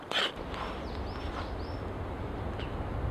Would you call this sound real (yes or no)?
yes